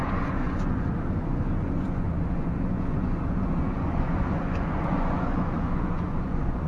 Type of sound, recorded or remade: remade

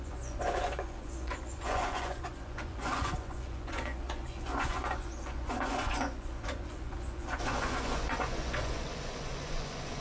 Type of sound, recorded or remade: remade